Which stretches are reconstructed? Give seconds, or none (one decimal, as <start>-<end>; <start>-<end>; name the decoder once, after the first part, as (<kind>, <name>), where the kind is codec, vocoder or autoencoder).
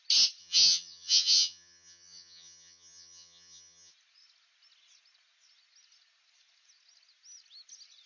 0.4-3.9 (vocoder, HiFi-GAN)